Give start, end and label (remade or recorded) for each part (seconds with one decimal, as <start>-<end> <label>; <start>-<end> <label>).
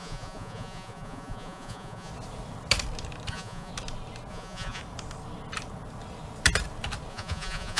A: 0.0-2.1 remade; 2.1-3.3 recorded; 3.3-3.7 remade; 3.7-4.3 recorded; 4.3-4.8 remade; 4.8-7.1 recorded; 7.1-7.8 remade